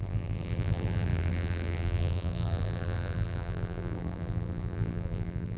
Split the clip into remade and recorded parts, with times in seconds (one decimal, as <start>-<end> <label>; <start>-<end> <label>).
0.0-5.6 remade